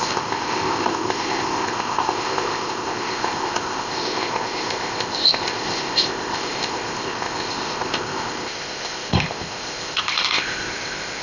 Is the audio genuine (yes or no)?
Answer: no